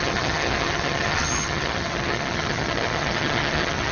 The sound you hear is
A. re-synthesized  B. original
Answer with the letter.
A